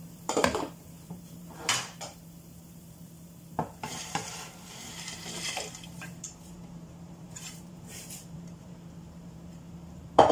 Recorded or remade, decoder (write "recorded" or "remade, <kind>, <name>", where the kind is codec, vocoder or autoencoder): remade, vocoder, BigVGAN v2